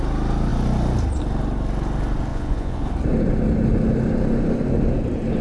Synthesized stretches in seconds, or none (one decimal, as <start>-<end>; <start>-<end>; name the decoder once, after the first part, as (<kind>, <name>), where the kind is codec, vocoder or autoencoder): 2.3-2.8 (vocoder, Vocos)